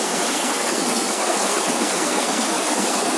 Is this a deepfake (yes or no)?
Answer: yes